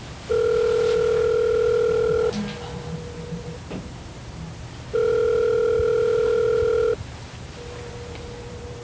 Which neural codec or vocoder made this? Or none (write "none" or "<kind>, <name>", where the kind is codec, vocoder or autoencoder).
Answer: none